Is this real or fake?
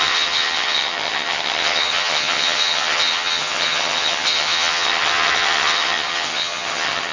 fake